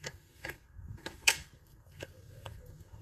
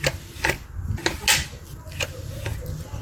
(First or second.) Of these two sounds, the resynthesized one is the first